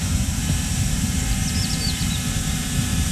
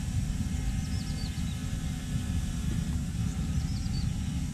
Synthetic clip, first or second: first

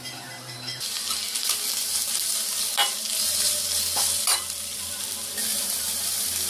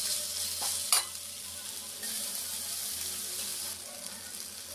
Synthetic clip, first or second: first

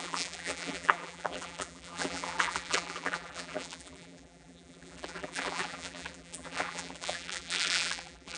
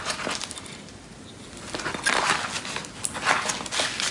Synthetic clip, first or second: first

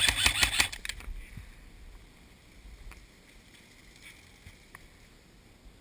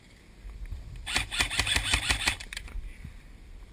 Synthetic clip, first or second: second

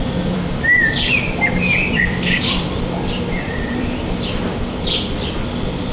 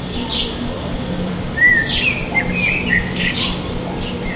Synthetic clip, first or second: first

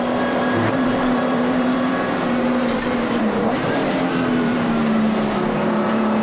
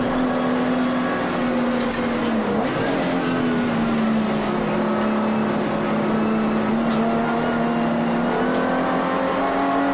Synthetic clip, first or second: first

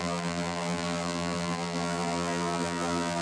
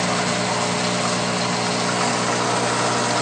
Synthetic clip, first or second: first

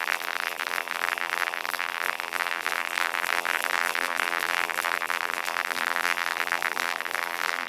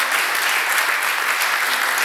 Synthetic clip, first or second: first